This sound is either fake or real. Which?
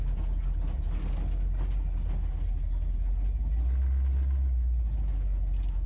real